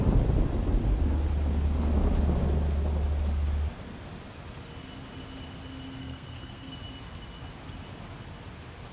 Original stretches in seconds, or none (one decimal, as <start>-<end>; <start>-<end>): 0.0-6.0; 6.7-8.9

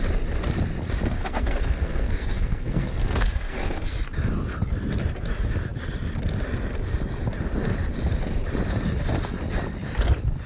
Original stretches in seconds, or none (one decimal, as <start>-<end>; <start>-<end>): 0.0-1.2; 4.0-10.5

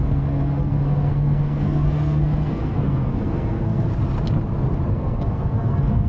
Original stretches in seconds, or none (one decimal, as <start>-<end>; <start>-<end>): 3.9-4.9

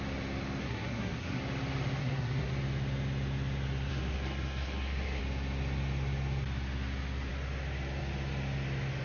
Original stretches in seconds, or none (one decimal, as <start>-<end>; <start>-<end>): 0.0-0.6; 1.4-2.0; 2.5-3.9; 5.2-9.0

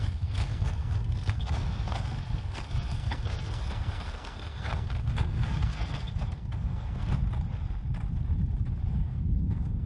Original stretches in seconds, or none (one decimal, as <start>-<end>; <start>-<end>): 7.2-8.9

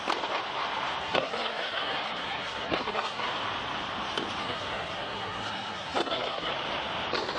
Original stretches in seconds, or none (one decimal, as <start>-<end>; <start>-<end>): 0.0-1.0; 3.3-4.4; 6.5-7.4

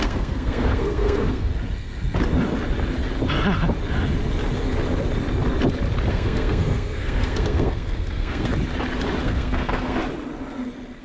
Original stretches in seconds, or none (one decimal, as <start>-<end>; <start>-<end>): 1.5-6.1; 8.5-9.2; 10.0-11.0